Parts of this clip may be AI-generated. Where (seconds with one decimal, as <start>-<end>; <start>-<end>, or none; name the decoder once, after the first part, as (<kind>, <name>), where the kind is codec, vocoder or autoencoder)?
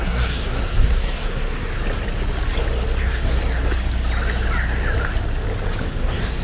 0.0-1.7 (codec, SNAC); 3.0-3.4; 5.8-6.4